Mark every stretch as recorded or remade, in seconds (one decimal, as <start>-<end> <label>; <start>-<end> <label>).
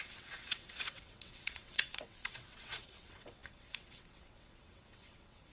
0.0-5.5 remade